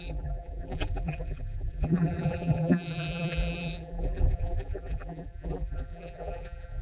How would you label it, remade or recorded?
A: remade